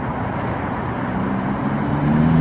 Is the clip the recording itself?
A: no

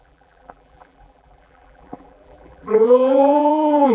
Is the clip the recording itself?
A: no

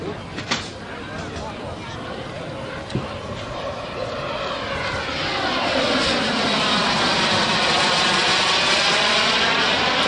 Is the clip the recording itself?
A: yes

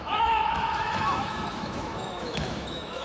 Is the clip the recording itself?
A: no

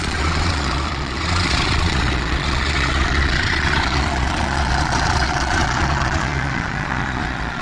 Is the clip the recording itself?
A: no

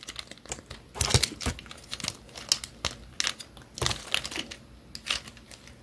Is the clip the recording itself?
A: yes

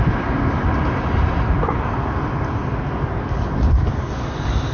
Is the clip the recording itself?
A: yes